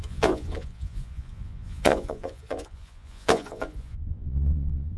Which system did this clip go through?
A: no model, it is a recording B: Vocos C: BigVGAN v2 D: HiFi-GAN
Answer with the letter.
B